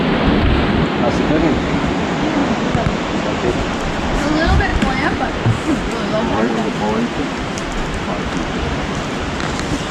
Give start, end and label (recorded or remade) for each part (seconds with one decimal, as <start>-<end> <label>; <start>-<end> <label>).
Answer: 0.0-9.9 recorded